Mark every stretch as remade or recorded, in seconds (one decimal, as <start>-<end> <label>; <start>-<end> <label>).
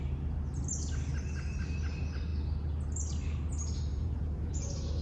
0.0-3.9 recorded; 3.9-4.5 remade; 4.5-5.0 recorded